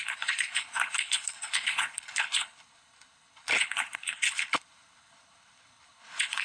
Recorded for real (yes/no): no